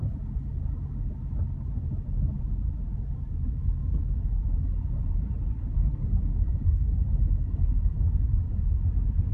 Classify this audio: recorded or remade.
recorded